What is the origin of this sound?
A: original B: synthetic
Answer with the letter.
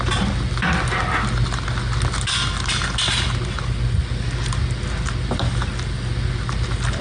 A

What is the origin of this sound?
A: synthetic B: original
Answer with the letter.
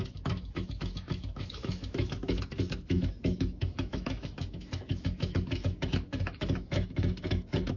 A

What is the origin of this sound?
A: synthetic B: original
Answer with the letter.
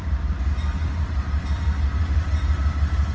A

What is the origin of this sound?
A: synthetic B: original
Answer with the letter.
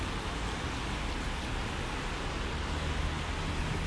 B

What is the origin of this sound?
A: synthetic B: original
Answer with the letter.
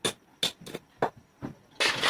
B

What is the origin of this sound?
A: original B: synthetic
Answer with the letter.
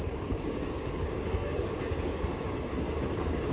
B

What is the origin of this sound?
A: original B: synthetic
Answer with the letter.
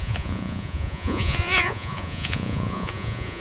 B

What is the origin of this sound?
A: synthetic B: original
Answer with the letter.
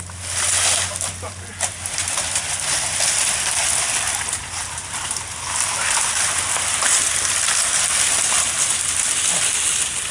B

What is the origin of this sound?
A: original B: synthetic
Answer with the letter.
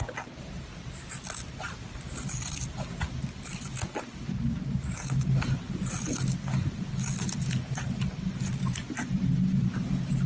A